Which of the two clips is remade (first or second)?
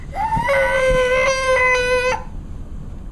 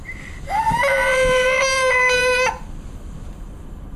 second